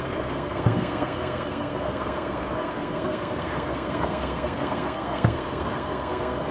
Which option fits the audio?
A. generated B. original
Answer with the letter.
A